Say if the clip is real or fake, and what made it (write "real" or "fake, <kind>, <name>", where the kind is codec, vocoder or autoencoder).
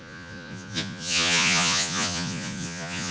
fake, vocoder, Vocos